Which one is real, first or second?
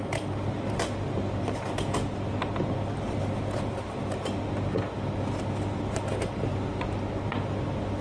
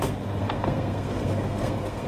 first